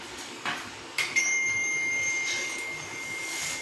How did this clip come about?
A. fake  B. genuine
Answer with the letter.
A